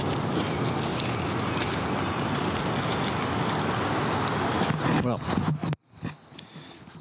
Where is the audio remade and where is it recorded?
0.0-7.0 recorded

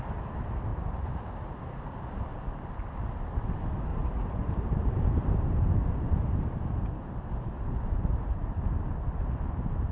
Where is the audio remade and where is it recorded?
0.0-0.7 recorded; 0.7-1.8 remade; 1.8-3.9 recorded; 3.9-8.5 remade; 8.5-9.9 recorded